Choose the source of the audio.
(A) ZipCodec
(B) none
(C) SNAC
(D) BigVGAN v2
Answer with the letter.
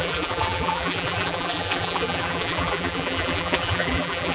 D